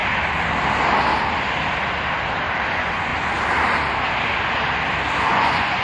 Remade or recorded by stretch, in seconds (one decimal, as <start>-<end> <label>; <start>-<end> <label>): 0.0-2.7 recorded; 2.7-3.1 remade; 3.1-5.3 recorded; 5.3-5.8 remade